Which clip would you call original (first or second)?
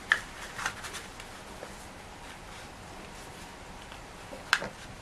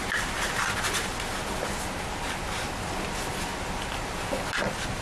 second